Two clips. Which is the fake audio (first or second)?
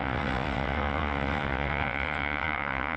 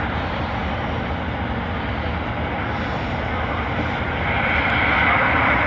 first